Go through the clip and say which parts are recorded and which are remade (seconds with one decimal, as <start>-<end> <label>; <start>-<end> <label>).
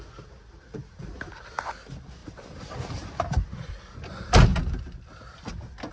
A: 0.0-5.9 recorded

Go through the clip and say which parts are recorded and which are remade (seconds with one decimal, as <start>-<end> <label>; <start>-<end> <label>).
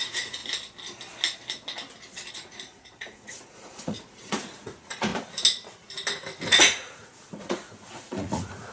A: 0.0-0.4 remade; 0.4-2.3 recorded; 2.3-5.1 remade; 5.1-6.4 recorded; 6.4-8.7 remade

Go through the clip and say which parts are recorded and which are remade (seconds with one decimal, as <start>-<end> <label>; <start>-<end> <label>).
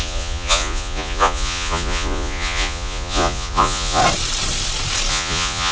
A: 0.0-4.0 remade; 4.0-5.1 recorded; 5.1-5.7 remade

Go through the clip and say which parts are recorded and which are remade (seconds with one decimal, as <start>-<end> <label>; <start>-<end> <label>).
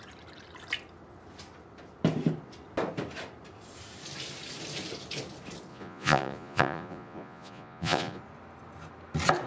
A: 0.0-5.7 recorded; 5.7-8.2 remade; 8.2-9.5 recorded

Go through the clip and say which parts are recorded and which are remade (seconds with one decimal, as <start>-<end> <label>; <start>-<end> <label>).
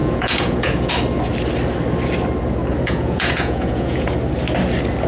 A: 0.0-0.9 remade; 0.9-2.7 recorded; 2.7-4.1 remade; 4.1-5.1 recorded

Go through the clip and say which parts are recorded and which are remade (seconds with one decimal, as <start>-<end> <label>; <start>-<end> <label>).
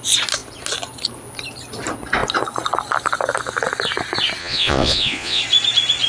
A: 0.0-4.4 recorded; 4.4-5.4 remade; 5.4-6.1 recorded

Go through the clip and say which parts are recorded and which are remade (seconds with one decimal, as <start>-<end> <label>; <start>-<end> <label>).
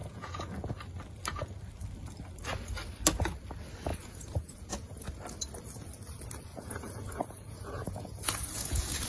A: 0.0-0.5 remade; 0.5-3.9 recorded; 3.9-5.1 remade; 5.1-6.5 recorded; 6.5-9.1 remade